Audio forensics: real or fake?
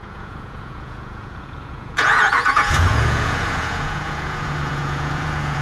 fake